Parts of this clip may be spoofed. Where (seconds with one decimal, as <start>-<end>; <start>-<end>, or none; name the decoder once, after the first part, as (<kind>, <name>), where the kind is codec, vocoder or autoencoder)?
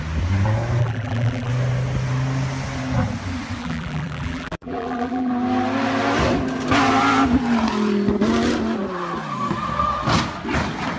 0.8-1.5 (vocoder, BigVGAN v2); 3.6-5.3